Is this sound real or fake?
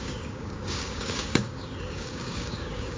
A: fake